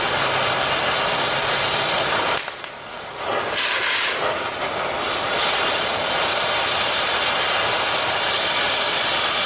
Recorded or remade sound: recorded